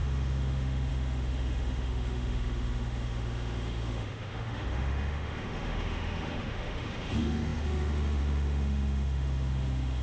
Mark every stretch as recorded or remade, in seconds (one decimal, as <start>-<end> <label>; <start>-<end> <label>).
0.0-10.0 remade